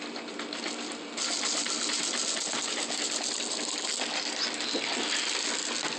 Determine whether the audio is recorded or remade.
recorded